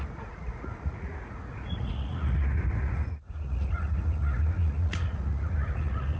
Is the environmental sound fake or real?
fake